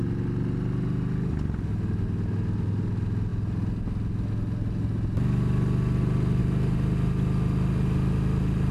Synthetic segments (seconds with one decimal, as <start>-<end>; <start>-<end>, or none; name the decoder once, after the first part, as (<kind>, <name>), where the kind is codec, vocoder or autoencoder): none